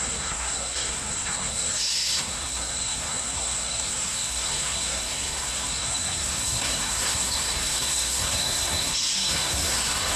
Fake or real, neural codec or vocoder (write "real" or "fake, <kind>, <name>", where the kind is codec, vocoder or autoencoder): fake, codec, SNAC